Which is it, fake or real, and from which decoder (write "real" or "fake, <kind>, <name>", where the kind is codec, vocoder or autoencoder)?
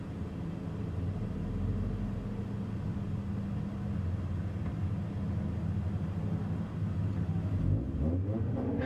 real